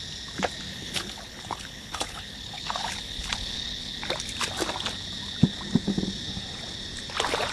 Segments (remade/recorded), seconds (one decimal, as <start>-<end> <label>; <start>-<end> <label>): 0.0-0.7 recorded; 0.7-4.0 remade; 4.0-7.5 recorded